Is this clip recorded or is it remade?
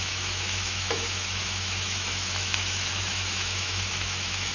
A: remade